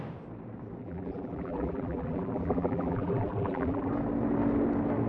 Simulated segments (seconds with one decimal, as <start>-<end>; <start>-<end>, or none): 0.8-3.9